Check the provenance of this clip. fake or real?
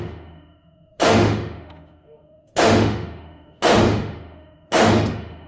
fake